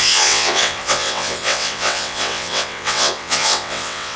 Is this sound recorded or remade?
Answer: remade